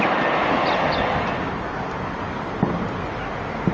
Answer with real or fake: real